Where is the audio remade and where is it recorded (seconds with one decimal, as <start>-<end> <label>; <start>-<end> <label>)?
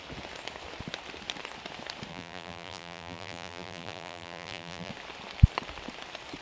0.0-2.1 recorded; 2.1-4.9 remade; 4.9-6.4 recorded